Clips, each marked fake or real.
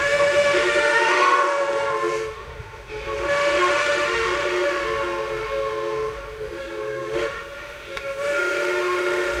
fake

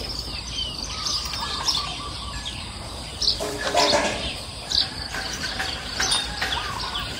fake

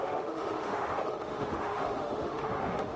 fake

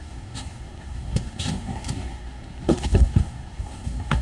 fake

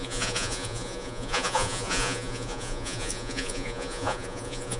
fake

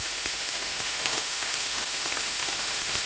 fake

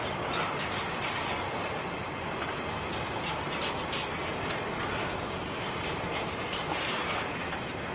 real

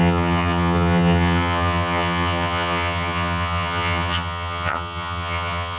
fake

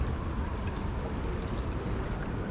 real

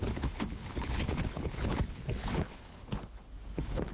fake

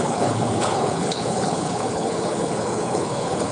fake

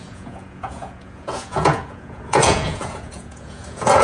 fake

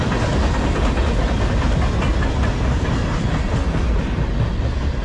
real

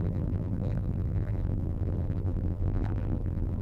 fake